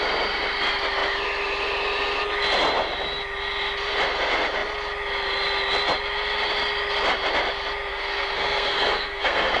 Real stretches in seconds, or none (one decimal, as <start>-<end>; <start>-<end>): 0.0-7.9